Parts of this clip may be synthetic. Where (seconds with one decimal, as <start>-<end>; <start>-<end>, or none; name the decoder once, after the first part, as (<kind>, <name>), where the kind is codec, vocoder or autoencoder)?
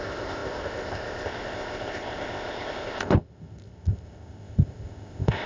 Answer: 0.0-5.5 (codec, ZipCodec)